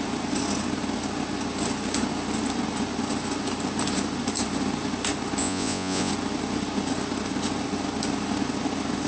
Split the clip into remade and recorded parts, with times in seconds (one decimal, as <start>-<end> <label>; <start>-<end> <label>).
0.0-5.4 recorded; 5.4-6.1 remade; 6.1-9.1 recorded